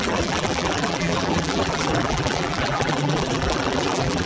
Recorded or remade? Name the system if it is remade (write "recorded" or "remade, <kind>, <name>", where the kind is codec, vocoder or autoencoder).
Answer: remade, vocoder, BigVGAN v2